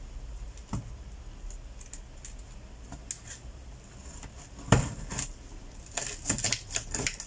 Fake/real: real